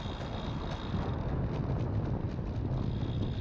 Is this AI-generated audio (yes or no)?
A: no